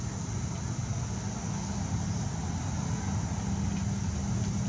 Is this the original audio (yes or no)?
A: yes